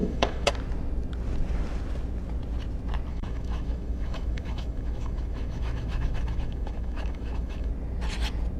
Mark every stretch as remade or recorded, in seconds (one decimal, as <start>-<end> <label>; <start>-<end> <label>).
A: 0.0-0.5 remade; 0.5-3.1 recorded; 3.1-7.7 remade; 7.7-8.6 recorded